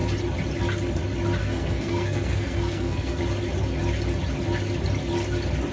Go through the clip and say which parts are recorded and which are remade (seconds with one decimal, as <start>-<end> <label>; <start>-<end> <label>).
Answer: 0.0-1.4 recorded; 1.4-3.2 remade; 3.2-5.7 recorded